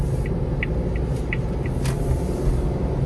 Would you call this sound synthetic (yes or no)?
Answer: no